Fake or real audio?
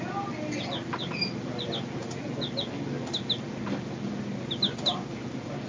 real